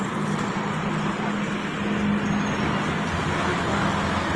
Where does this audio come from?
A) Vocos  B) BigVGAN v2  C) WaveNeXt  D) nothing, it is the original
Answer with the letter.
D